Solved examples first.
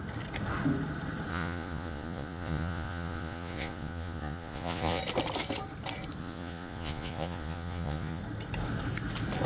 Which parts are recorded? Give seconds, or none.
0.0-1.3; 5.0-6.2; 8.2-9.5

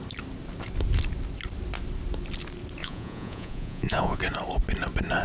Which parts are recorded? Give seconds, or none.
0.0-2.8; 4.2-5.2

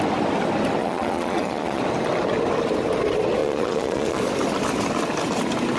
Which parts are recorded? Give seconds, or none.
0.0-0.8; 1.8-3.4; 4.2-5.8

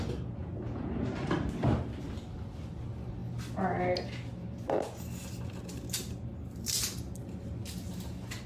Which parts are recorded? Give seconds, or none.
0.0-0.4; 0.9-8.5

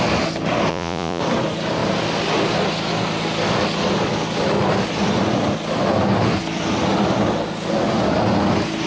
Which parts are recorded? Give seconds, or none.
0.0-0.7; 1.2-8.9